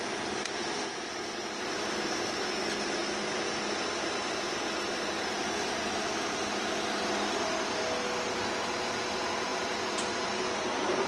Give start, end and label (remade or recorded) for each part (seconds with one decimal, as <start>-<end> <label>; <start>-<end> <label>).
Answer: 0.0-11.1 recorded